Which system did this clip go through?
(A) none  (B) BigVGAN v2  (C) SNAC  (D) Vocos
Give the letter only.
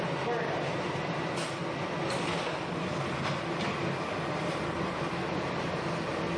A